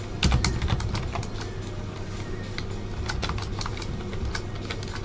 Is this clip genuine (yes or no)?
yes